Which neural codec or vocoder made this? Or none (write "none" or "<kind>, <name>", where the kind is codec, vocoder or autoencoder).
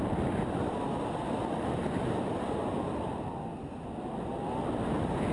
none